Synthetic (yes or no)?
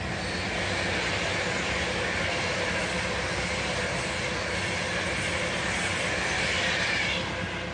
no